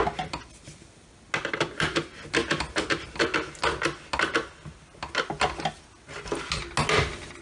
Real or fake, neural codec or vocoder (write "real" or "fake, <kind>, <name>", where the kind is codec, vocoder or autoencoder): real